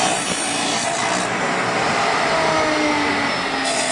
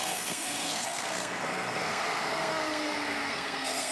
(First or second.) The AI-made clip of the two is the second